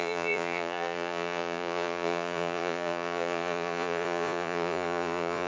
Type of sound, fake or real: fake